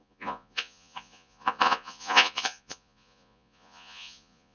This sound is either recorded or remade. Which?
remade